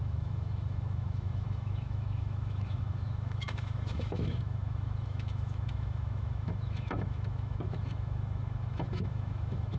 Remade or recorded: remade